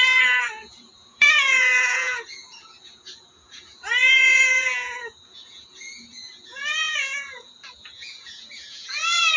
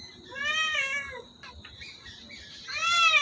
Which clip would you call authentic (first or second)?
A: second